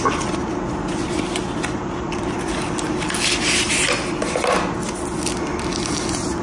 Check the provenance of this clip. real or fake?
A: real